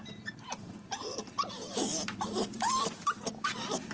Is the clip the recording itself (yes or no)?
no